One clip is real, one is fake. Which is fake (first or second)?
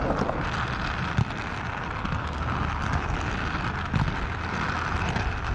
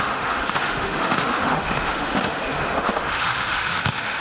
second